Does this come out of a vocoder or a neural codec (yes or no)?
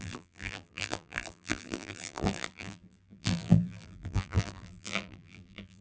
yes